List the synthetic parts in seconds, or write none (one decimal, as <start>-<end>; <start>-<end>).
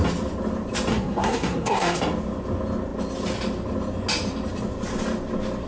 0.9-2.0